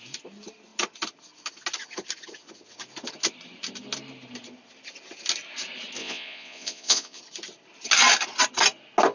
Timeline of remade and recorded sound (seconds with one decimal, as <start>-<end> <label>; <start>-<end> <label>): 0.0-6.0 recorded; 6.0-7.2 remade; 7.2-9.1 recorded